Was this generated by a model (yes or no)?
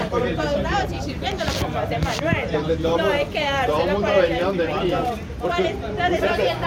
yes